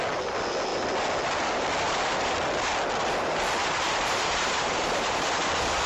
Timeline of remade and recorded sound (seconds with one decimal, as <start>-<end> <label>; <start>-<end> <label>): 0.0-3.6 recorded; 3.6-5.5 remade; 5.5-5.9 recorded